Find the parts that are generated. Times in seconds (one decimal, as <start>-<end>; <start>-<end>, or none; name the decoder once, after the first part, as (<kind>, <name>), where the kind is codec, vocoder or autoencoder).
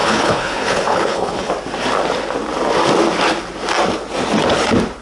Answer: 0.0-1.5 (codec, HILCodec)